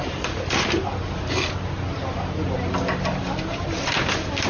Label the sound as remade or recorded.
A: recorded